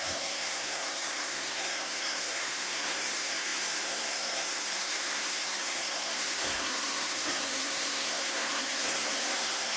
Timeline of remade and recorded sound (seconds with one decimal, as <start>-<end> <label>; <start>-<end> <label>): 0.0-9.8 remade